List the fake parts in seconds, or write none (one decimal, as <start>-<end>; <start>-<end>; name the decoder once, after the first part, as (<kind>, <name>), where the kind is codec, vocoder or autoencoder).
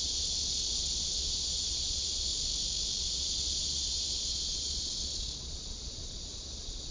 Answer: 0.0-2.3 (vocoder, Vocos); 3.0-6.9